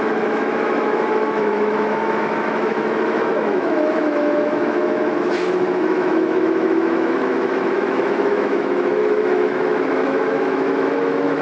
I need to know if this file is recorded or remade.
remade